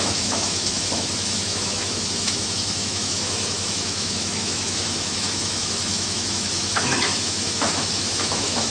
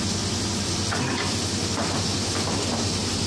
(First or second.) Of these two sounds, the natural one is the second